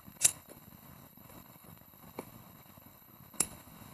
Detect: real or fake fake